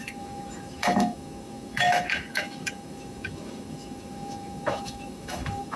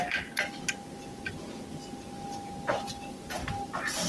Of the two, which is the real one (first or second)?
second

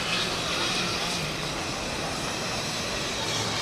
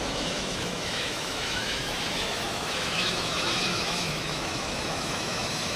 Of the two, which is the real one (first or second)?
first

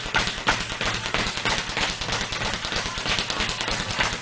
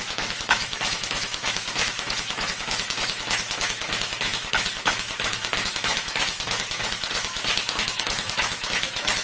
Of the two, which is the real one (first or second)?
first